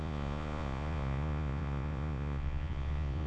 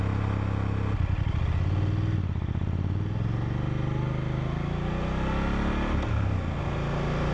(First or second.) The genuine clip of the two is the second